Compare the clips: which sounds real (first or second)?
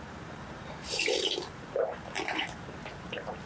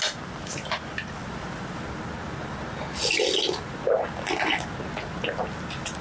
second